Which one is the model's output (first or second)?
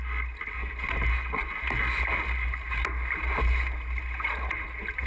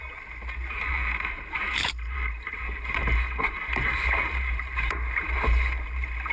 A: second